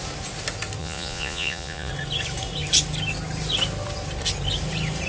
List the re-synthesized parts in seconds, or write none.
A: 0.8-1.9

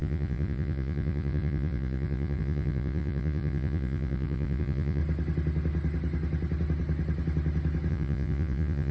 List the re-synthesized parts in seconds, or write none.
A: 0.0-5.0; 7.9-8.9

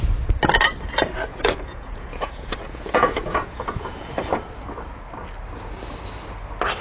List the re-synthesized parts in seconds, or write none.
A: 1.3-4.3

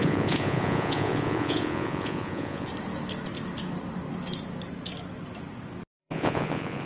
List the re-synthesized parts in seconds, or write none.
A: 0.0-2.7; 6.0-6.9

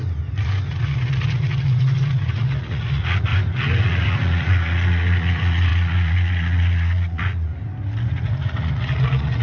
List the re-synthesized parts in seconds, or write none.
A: 0.7-3.3; 3.8-7.5; 8.1-9.4

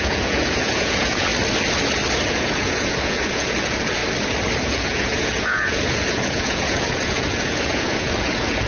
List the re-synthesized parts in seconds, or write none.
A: 0.0-1.3; 2.3-4.0; 4.6-8.7

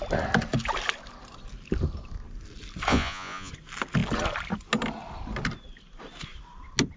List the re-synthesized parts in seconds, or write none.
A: 2.9-3.5

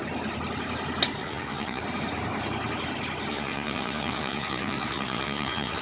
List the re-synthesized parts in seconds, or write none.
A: 1.2-1.8; 3.3-5.8